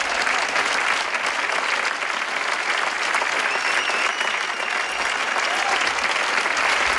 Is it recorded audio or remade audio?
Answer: recorded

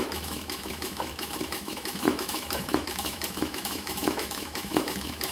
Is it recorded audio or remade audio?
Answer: remade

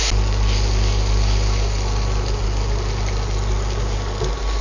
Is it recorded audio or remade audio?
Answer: recorded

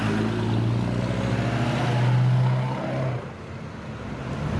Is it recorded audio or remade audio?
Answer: recorded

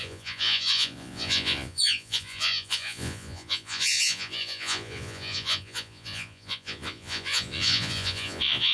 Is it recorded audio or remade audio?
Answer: remade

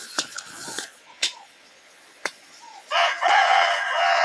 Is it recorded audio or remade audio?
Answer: remade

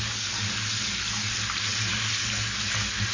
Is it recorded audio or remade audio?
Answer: recorded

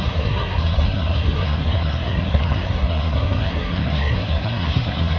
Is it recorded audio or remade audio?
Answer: remade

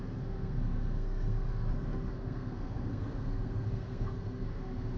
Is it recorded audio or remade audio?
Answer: remade